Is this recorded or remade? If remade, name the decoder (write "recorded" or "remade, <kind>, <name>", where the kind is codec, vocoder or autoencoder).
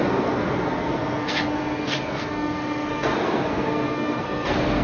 remade, codec, SNAC